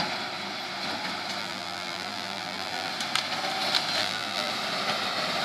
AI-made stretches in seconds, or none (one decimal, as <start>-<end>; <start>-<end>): 1.4-2.9; 4.0-4.5